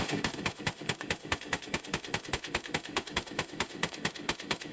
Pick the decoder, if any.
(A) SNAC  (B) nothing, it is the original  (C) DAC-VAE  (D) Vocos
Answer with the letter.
C